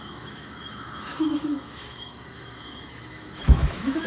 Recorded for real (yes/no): no